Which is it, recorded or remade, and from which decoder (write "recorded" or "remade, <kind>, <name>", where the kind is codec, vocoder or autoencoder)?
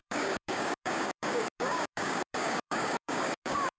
remade, codec, DAC